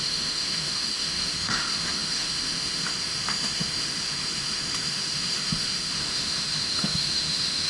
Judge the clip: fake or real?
fake